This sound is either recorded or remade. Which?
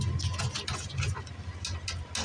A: recorded